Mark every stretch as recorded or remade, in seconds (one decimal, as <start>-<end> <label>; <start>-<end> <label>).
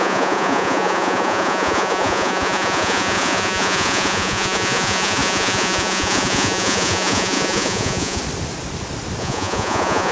0.0-8.2 remade; 8.2-9.2 recorded; 9.2-10.1 remade